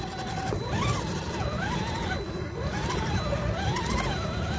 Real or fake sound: real